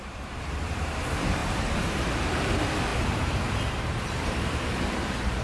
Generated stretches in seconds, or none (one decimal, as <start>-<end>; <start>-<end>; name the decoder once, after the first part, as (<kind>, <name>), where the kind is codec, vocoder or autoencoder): 0.0-5.4 (vocoder, BigVGAN v2)